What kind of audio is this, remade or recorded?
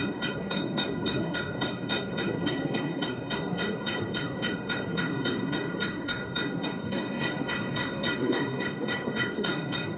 remade